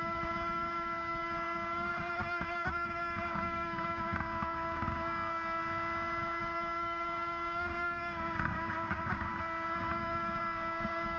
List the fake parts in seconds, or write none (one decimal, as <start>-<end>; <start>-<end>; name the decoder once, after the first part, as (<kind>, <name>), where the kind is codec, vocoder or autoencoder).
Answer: 0.0-5.6 (codec, DAC); 6.4-9.3; 9.9-11.2